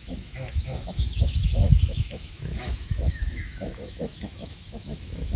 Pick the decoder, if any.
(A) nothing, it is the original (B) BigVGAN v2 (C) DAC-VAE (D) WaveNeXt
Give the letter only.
C